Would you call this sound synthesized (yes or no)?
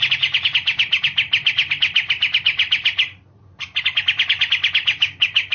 no